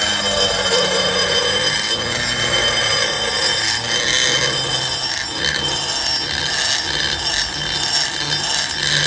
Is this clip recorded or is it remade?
recorded